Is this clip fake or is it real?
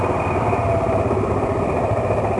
real